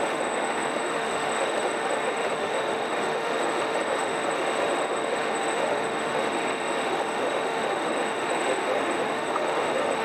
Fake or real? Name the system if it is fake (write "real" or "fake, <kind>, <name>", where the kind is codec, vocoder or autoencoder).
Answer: fake, autoencoder, DAC-VAE